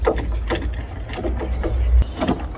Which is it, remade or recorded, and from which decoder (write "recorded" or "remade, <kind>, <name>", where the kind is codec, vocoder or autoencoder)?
recorded